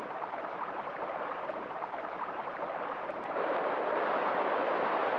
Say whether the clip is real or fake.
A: fake